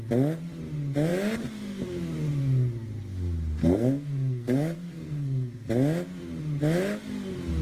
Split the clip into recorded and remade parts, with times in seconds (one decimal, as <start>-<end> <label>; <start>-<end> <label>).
0.0-3.6 recorded; 3.6-5.7 remade; 5.7-7.6 recorded